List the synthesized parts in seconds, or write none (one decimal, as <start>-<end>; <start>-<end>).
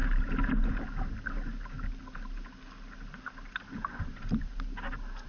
none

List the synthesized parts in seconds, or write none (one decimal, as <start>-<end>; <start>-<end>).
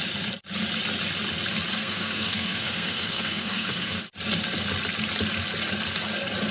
1.8-4.0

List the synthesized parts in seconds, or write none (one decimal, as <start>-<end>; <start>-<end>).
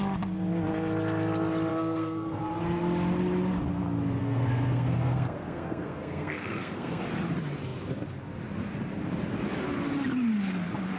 1.7-2.4; 4.2-7.0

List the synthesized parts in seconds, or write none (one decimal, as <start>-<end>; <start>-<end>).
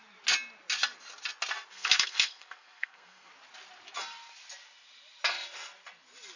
1.7-3.3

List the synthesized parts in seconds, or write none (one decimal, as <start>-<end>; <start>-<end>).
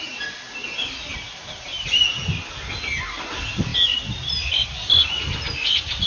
none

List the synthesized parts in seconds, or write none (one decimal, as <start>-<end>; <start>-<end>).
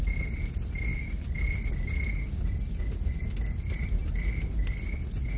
none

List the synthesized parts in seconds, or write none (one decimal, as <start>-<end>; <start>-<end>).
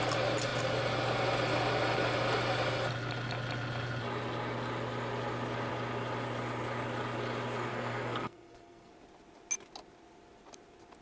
7.7-8.9